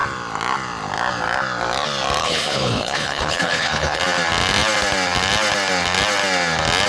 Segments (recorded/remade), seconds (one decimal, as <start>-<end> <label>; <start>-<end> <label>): 0.0-2.2 recorded; 2.2-4.0 remade; 4.0-6.9 recorded